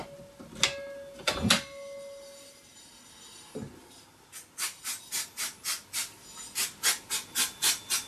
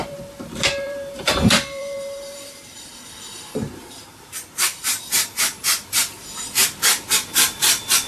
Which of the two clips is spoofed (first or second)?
second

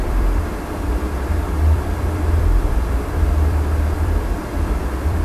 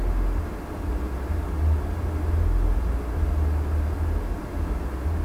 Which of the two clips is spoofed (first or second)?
first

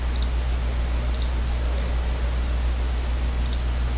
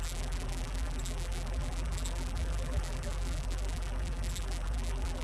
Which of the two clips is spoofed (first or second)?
second